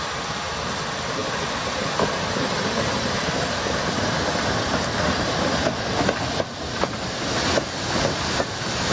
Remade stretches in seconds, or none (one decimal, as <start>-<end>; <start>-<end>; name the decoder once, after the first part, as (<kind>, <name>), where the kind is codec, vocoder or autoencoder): none